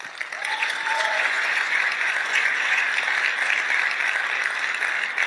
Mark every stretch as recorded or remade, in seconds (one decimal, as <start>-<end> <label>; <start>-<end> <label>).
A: 0.0-0.4 recorded; 0.4-2.9 remade; 2.9-5.3 recorded